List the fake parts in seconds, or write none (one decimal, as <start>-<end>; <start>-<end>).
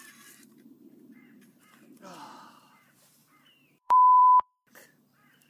0.0-5.5